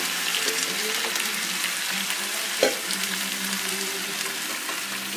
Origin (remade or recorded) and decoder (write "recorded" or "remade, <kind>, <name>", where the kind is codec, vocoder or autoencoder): recorded